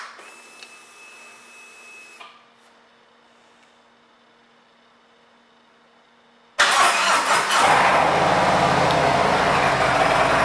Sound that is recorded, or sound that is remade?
recorded